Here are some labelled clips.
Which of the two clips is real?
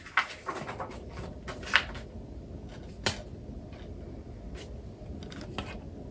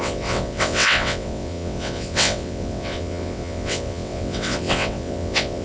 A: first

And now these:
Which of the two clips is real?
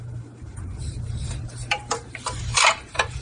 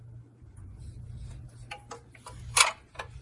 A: second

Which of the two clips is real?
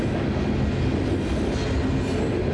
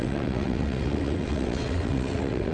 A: first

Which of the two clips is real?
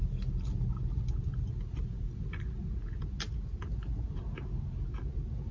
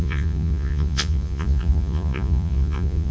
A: first